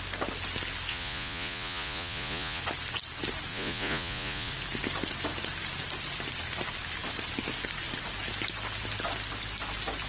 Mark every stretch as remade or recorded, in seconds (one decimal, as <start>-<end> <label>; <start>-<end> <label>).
0.0-0.9 recorded; 0.9-2.6 remade; 2.6-3.5 recorded; 3.5-4.5 remade; 4.5-10.1 recorded